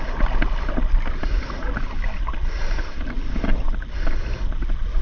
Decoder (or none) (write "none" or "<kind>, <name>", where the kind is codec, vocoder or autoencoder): none